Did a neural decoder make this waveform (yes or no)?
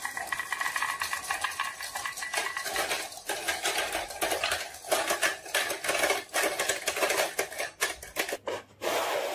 no